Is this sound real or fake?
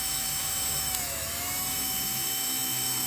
fake